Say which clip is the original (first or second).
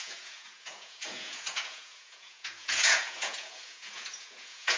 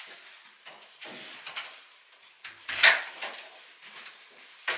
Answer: second